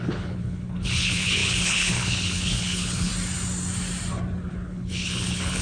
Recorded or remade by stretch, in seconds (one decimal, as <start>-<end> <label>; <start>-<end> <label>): 0.0-3.1 remade; 3.1-4.5 recorded; 4.5-5.6 remade